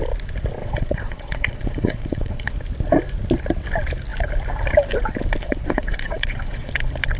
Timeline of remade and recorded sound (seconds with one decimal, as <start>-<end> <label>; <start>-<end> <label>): 0.0-0.6 recorded; 0.6-2.5 remade; 2.5-5.4 recorded; 5.4-6.7 remade; 6.7-7.2 recorded